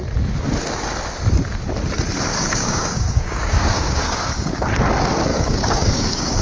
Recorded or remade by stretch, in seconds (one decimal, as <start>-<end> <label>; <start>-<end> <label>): 0.0-2.3 recorded; 2.3-4.7 remade; 4.7-5.3 recorded; 5.3-6.4 remade